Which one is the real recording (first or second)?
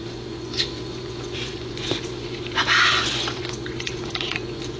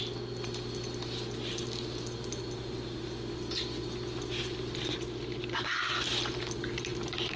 second